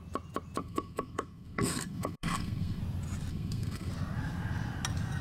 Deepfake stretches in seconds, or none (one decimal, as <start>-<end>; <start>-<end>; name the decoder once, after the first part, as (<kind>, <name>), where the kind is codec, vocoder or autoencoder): 0.6-2.8 (codec, SNAC); 3.3-3.9